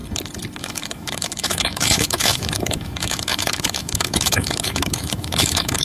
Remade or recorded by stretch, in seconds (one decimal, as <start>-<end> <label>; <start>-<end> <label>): 0.0-0.6 recorded; 0.6-5.8 remade